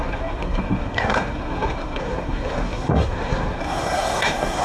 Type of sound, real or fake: fake